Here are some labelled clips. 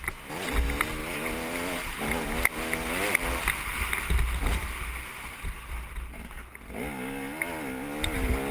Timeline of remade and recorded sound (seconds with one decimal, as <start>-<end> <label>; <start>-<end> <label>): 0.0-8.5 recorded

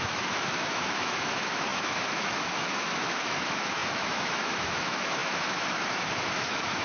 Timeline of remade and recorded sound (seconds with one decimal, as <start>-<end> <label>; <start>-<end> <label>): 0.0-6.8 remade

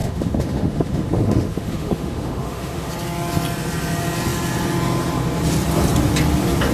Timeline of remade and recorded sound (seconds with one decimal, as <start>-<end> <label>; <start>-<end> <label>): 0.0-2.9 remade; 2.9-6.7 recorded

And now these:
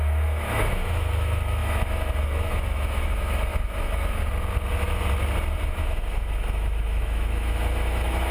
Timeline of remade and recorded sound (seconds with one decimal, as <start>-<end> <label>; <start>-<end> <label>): 0.0-4.2 remade; 4.2-5.7 recorded; 5.7-8.3 remade

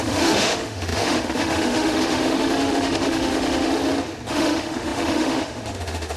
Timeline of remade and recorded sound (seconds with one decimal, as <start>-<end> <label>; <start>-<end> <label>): 0.0-3.8 remade; 3.8-4.3 recorded; 4.3-6.2 remade